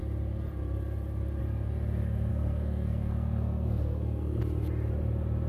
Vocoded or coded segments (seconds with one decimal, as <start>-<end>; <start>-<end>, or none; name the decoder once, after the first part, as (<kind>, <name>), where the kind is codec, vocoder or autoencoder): 2.3-4.4 (codec, SNAC)